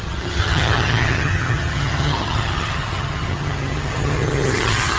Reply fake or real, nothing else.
fake